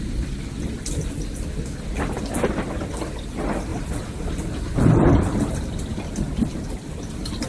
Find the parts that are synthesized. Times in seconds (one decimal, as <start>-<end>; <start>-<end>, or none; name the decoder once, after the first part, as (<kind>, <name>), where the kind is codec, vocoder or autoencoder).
3.7-5.1 (vocoder, BigVGAN v2)